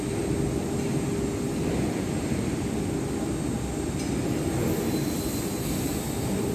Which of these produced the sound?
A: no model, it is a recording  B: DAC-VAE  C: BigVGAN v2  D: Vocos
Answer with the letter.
A